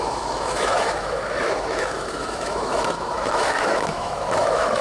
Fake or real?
fake